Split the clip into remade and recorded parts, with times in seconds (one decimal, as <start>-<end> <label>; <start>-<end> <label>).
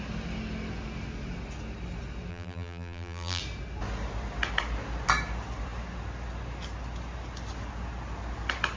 0.0-2.3 recorded; 2.3-3.4 remade; 3.4-8.8 recorded